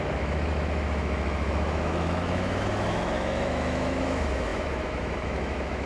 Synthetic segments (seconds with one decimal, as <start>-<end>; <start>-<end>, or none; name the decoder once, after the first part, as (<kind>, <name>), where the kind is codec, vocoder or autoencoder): 0.0-5.9 (autoencoder, DAC-VAE)